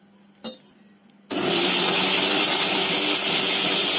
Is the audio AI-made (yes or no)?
no